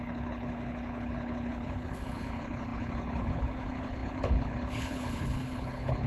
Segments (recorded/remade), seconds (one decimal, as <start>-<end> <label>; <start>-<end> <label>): 0.0-6.1 remade